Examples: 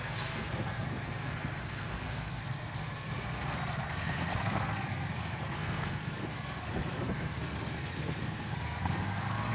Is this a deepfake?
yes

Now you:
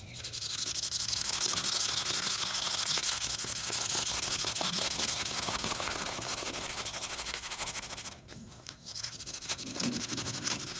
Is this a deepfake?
yes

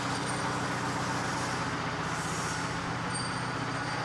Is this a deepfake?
no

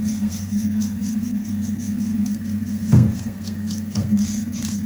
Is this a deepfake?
yes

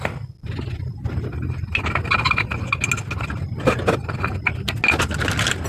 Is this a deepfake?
no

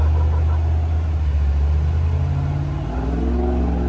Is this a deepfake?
no